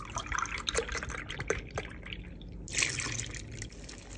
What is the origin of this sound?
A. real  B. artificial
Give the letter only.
A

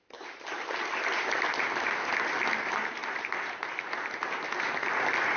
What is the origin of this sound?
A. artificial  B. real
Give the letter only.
B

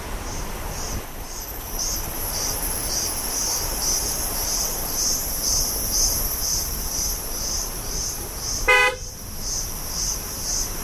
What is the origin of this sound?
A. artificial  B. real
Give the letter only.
A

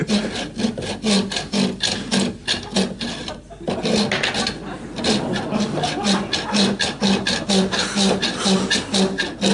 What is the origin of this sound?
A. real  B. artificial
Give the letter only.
A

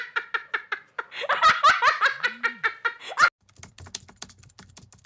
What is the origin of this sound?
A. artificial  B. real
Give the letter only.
B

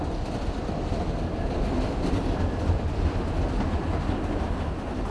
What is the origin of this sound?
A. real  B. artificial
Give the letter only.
A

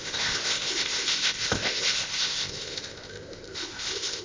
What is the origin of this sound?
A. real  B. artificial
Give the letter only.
B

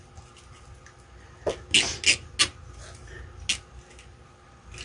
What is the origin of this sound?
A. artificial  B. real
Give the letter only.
B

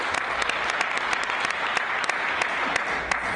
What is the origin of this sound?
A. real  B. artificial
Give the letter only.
A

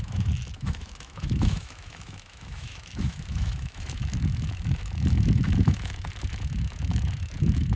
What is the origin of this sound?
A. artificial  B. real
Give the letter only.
A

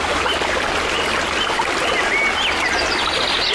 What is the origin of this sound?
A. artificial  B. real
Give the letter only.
B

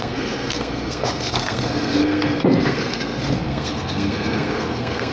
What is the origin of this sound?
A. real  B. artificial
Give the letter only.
B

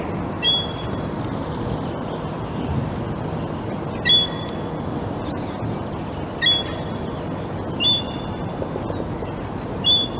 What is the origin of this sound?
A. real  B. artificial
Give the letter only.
A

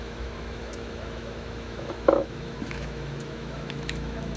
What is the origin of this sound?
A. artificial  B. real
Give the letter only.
A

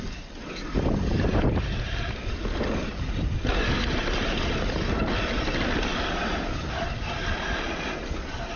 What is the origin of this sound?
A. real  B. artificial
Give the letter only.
A